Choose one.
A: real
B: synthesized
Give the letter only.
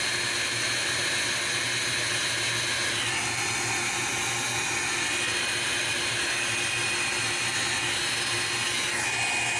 A